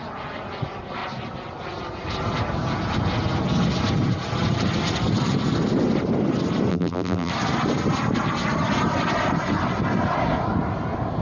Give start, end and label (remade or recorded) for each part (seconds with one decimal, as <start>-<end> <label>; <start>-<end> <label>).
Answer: 0.0-6.7 recorded; 6.7-7.3 remade; 7.3-11.2 recorded